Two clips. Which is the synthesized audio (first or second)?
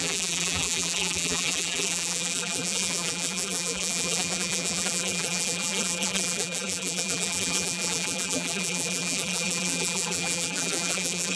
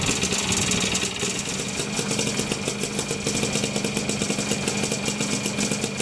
first